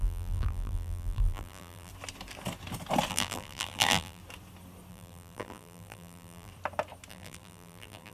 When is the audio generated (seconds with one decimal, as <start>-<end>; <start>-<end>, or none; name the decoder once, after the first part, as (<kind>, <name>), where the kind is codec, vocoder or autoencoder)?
0.0-1.9 (vocoder, BigVGAN v2); 3.1-4.2; 4.9-6.5; 7.1-8.1